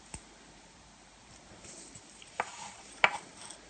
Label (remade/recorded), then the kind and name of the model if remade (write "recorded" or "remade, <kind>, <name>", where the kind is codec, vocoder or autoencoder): recorded